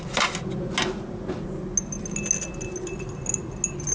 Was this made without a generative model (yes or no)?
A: yes